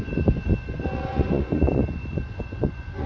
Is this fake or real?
fake